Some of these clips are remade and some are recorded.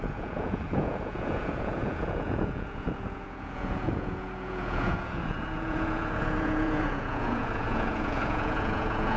remade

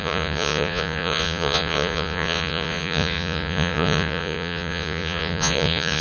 remade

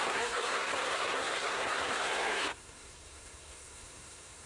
remade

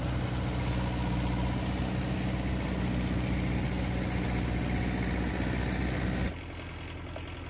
recorded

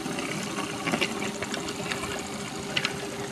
recorded